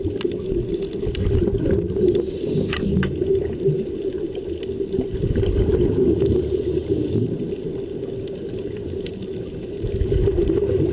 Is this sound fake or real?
real